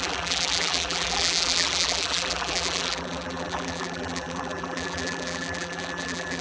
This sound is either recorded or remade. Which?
remade